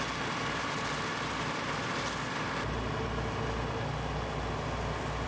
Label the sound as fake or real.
real